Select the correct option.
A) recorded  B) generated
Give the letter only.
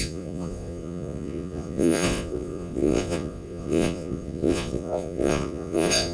B